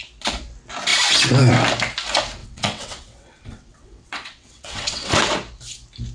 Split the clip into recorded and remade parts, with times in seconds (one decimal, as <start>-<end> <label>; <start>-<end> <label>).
0.0-2.4 recorded; 2.4-5.2 remade; 5.2-6.1 recorded